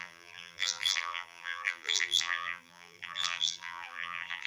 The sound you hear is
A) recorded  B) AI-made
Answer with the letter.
B